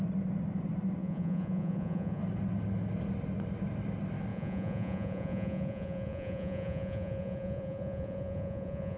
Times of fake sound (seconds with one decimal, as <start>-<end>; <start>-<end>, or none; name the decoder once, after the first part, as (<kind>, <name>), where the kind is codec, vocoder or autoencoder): 1.0-2.2 (vocoder, Vocos); 4.3-9.0